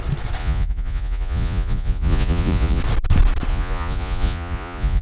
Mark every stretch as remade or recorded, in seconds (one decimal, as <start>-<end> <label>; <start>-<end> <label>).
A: 0.0-0.4 recorded; 0.4-2.8 remade; 2.8-3.5 recorded; 3.5-5.0 remade